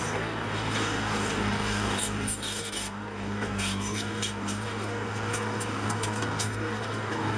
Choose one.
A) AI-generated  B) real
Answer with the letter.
A